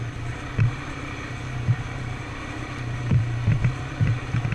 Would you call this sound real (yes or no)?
no